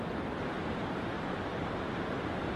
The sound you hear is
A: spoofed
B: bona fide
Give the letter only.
B